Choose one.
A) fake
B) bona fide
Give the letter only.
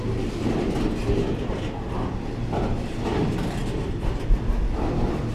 B